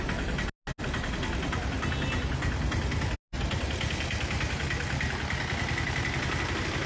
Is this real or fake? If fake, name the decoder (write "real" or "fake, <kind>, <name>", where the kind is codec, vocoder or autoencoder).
real